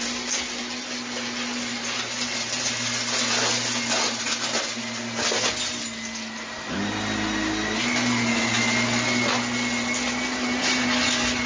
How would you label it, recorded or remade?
recorded